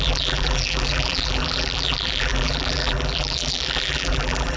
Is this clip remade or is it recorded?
remade